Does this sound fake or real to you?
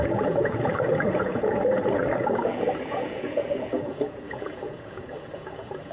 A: fake